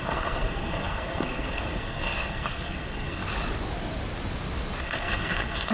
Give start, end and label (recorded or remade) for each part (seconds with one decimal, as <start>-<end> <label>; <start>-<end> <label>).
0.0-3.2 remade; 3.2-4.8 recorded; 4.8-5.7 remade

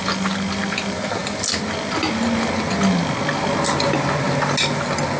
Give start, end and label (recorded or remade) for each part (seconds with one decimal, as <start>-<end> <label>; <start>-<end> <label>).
0.0-5.2 recorded

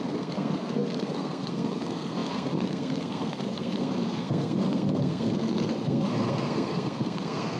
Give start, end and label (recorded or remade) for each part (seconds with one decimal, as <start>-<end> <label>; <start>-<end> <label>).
0.0-7.6 remade

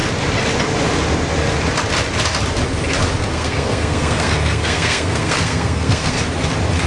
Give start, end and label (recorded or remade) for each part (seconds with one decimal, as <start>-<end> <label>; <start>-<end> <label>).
0.0-3.3 recorded; 3.3-6.2 remade; 6.2-6.9 recorded

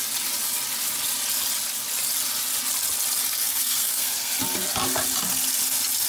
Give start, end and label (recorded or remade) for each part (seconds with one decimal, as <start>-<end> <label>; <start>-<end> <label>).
0.0-3.4 recorded; 3.4-4.3 remade; 4.3-6.1 recorded